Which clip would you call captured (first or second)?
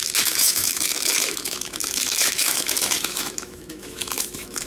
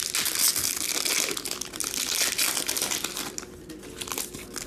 second